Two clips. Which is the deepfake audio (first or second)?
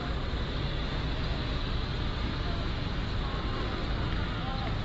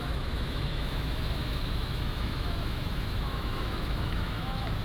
second